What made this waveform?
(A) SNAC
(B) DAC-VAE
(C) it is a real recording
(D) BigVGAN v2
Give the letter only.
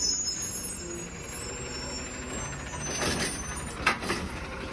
C